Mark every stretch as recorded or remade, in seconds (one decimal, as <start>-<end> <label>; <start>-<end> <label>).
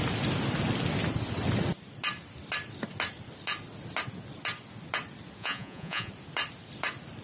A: 0.0-5.4 recorded; 5.4-6.1 remade; 6.1-7.2 recorded